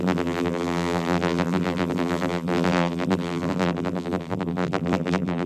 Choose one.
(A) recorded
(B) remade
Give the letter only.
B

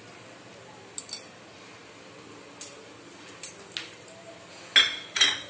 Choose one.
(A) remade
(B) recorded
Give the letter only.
B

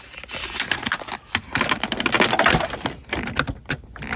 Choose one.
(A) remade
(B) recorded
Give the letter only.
B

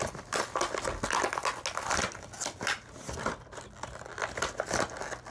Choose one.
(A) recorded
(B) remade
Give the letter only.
A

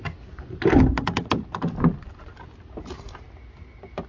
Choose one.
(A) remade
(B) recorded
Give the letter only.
B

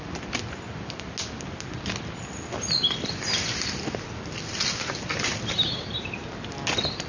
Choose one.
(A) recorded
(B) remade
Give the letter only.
A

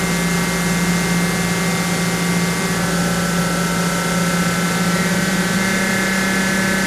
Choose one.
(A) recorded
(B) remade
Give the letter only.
A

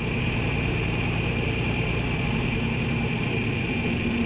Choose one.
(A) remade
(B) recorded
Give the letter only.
A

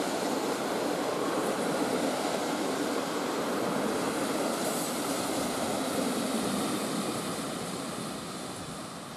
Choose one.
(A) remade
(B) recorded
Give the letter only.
B